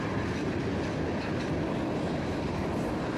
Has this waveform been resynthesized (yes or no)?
no